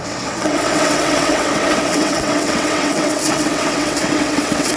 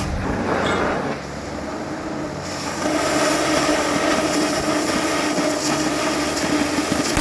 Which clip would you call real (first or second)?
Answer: second